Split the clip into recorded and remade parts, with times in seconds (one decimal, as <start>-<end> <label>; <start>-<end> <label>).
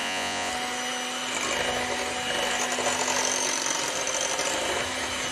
0.0-0.5 remade; 0.5-5.3 recorded